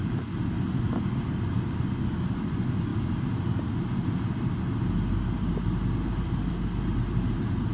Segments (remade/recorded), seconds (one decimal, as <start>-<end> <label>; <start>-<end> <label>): 0.0-7.7 recorded